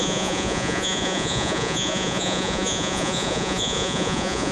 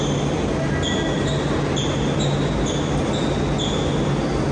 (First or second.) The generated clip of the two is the first